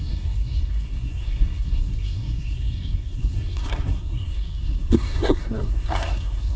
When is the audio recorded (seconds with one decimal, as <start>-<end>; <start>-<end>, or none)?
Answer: none